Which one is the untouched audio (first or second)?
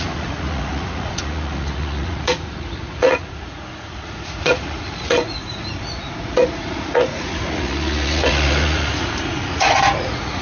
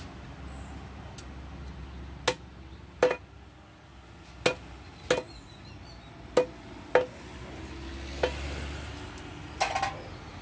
second